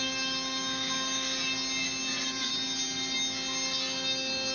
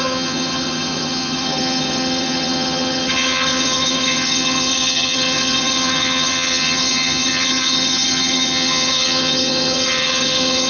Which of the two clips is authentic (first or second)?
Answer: first